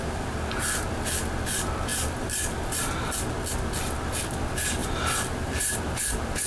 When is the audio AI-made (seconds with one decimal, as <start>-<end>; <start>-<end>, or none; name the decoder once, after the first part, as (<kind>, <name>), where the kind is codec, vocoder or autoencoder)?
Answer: 1.9-3.1 (vocoder, BigVGAN v2); 4.8-5.8